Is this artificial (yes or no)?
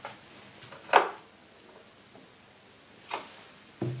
no